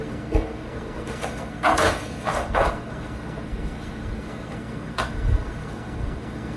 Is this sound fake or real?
fake